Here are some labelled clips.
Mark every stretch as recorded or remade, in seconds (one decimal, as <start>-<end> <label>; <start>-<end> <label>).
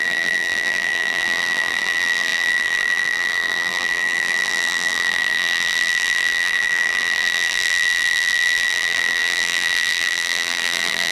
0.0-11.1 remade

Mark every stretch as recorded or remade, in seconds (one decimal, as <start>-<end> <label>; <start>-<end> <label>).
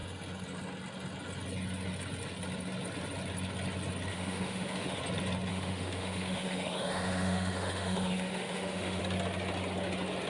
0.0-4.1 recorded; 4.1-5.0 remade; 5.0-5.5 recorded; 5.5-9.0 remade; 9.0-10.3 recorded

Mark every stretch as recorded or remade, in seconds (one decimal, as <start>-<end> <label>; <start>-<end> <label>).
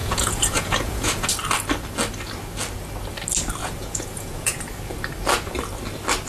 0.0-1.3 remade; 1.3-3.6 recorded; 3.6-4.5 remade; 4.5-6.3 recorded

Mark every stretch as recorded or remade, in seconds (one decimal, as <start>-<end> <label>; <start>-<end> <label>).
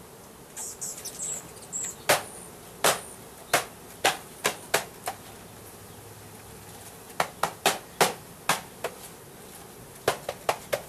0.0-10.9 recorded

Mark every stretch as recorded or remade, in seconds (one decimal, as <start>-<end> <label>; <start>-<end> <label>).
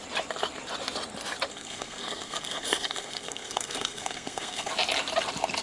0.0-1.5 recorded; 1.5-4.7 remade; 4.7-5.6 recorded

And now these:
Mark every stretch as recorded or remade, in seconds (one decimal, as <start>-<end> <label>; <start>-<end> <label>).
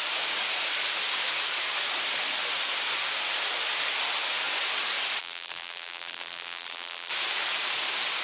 0.0-5.2 recorded; 5.2-7.1 remade; 7.1-8.2 recorded